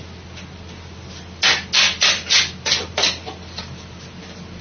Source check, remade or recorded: recorded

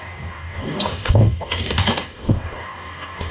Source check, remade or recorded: remade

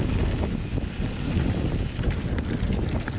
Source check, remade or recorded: recorded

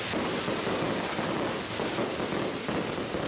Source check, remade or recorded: recorded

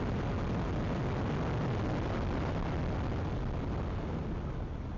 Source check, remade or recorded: recorded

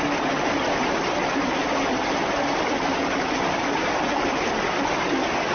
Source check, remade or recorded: recorded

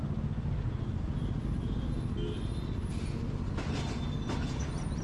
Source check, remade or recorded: recorded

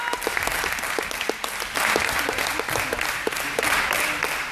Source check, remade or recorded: recorded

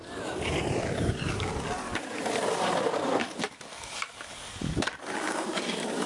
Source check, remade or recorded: remade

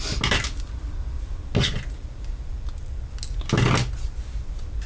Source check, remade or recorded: recorded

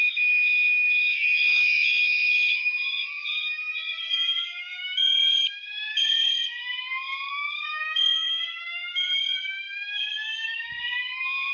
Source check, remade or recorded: remade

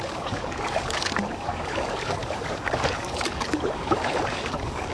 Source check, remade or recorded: remade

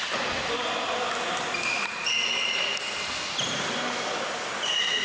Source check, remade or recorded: recorded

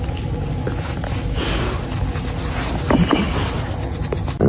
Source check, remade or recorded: recorded